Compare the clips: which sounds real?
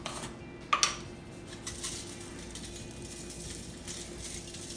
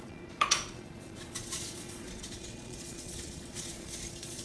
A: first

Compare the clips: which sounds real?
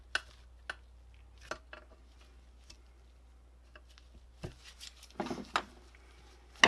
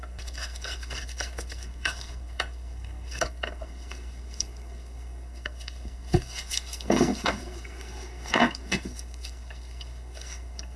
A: first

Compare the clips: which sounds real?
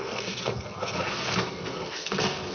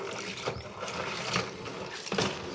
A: second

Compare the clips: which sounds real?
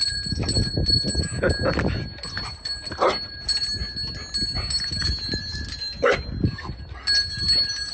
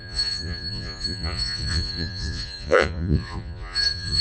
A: first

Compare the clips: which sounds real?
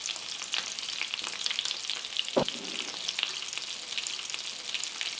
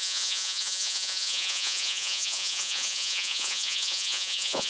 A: first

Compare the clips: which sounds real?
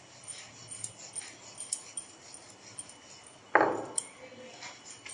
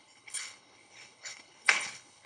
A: first